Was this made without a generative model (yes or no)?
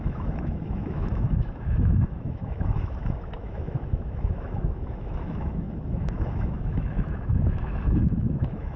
no